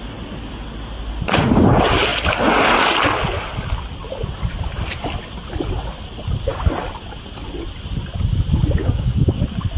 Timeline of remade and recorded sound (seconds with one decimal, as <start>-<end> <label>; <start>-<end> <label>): 0.0-8.8 recorded; 8.8-9.4 remade; 9.4-9.8 recorded